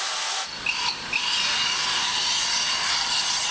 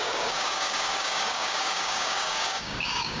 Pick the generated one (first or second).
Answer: second